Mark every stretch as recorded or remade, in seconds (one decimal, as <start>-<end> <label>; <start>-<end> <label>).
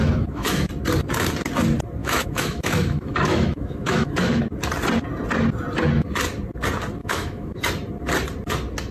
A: 0.0-0.7 remade; 0.7-2.0 recorded; 2.0-4.4 remade; 4.4-7.0 recorded; 7.0-7.6 remade; 7.6-8.9 recorded